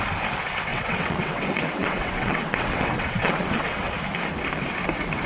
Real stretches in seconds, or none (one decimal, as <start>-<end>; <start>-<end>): 0.0-0.7; 3.9-5.3